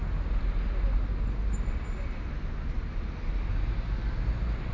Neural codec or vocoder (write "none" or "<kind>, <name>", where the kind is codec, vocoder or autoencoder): none